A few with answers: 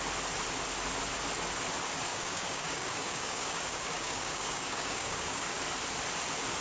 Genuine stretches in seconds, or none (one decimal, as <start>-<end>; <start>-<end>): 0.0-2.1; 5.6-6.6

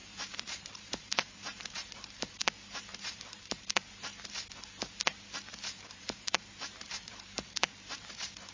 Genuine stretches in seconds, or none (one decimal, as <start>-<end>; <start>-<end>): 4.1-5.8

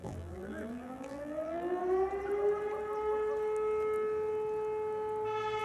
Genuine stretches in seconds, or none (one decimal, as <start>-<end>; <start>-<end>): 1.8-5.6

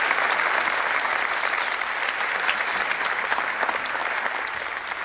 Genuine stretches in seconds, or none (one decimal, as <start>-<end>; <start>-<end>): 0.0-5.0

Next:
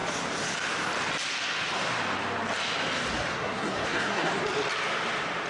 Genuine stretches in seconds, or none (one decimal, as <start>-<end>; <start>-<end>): 0.0-3.3; 4.3-5.5